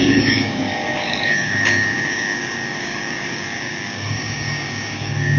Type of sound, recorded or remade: remade